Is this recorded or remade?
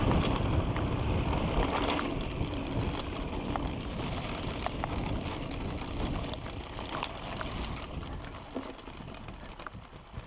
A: recorded